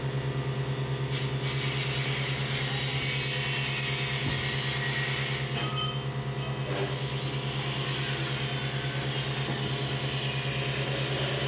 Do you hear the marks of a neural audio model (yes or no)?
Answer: no